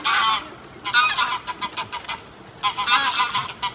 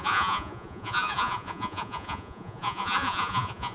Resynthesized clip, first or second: second